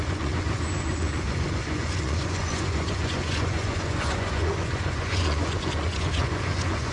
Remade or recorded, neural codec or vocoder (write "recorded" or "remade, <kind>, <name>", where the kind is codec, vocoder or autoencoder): remade, vocoder, Vocos